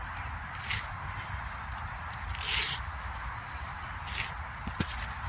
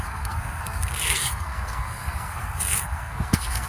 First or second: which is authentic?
first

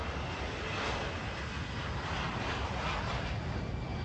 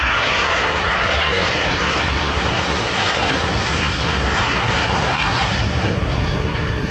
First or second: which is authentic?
first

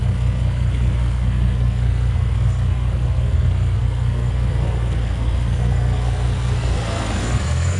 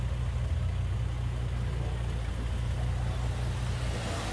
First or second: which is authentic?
second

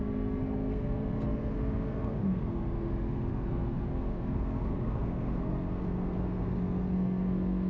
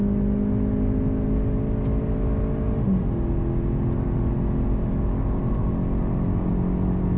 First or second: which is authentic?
second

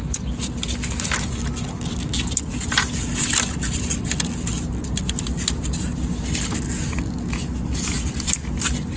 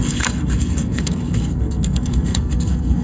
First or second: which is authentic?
first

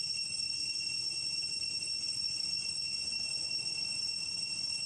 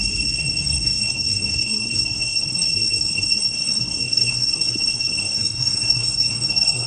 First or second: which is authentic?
first